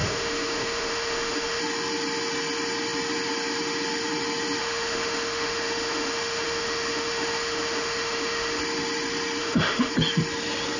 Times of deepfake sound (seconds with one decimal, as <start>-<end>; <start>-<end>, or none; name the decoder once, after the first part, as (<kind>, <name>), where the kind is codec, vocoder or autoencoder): 0.0-1.6 (autoencoder, DAC-VAE); 4.6-8.6; 9.4-9.9

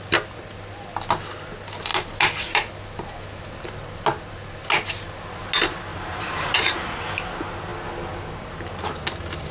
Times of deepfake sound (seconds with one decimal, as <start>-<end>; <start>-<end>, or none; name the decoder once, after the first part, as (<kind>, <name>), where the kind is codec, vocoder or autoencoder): 5.9-6.8 (vocoder, BigVGAN v2)

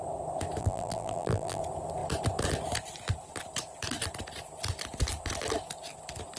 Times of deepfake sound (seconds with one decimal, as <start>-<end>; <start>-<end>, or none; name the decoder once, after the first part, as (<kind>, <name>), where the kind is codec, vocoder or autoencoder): 0.6-1.6 (vocoder, BigVGAN v2)

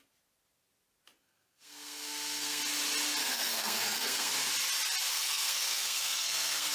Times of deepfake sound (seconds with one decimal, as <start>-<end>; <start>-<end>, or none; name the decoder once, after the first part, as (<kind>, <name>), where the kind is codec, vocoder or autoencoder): 1.2-2.6 (codec, SNAC); 3.2-4.3; 5.1-6.7

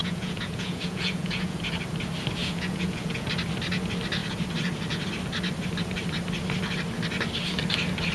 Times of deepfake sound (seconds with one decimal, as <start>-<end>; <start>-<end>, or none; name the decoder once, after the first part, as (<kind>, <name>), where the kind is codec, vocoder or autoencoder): 0.0-1.6 (vocoder, Vocos); 2.4-3.3

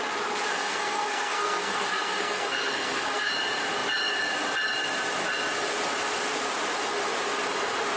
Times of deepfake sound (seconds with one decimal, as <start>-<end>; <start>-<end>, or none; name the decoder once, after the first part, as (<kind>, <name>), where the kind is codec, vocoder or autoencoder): 0.5-3.3 (codec, SNAC)

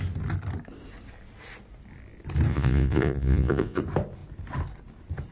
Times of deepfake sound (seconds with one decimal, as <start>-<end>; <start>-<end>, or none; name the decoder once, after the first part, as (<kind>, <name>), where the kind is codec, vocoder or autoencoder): 2.5-3.8 (vocoder, Vocos)